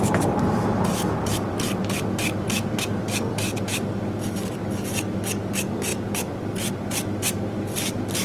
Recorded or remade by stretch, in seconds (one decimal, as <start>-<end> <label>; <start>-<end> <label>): 0.0-8.2 recorded